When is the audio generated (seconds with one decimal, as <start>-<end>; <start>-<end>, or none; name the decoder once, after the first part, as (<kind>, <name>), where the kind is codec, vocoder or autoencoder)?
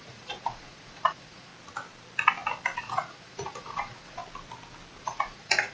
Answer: 0.0-1.5 (vocoder, Vocos); 2.8-4.2; 5.0-5.7